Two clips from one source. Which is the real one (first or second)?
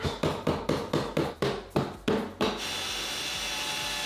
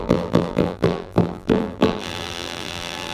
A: first